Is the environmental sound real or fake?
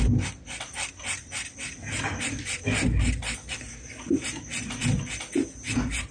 real